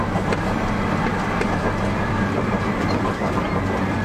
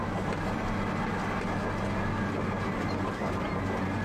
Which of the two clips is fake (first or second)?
first